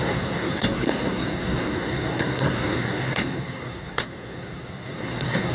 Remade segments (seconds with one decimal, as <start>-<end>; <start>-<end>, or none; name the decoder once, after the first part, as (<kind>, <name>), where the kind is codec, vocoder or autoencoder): 0.0-5.5 (codec, SNAC)